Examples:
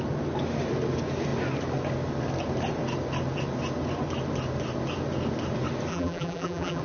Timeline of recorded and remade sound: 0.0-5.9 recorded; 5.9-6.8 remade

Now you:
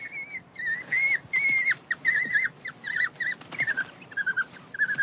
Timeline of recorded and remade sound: 0.0-1.0 recorded; 1.0-4.0 remade; 4.0-5.0 recorded

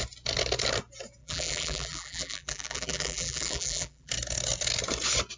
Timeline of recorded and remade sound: 0.0-1.2 recorded; 1.2-4.1 remade; 4.1-5.4 recorded

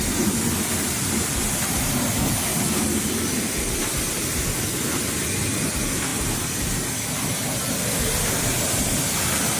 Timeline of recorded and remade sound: 0.0-2.5 remade; 2.5-3.8 recorded; 3.8-6.1 remade; 6.1-8.4 recorded; 8.4-9.6 remade

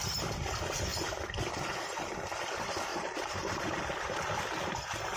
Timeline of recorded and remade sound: 0.0-2.9 recorded; 2.9-3.8 remade; 3.8-5.2 recorded